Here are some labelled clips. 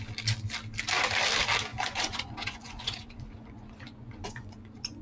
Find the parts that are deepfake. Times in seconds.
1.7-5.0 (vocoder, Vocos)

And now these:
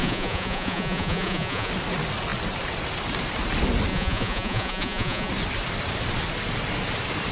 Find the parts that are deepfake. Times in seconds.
0.0-1.7 (vocoder, Vocos); 3.9-5.3

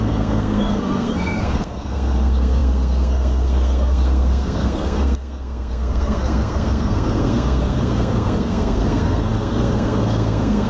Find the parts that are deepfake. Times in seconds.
0.0-10.7 (codec, SNAC)

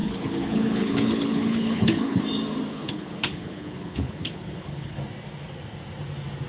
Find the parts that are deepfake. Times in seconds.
0.0-2.2 (codec, HILCodec); 2.7-5.0